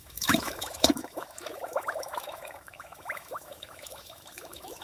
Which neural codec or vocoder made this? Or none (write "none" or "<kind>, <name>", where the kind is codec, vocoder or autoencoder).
autoencoder, DAC-VAE